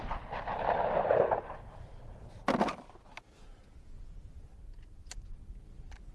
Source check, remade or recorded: recorded